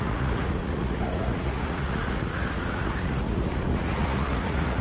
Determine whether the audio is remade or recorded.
remade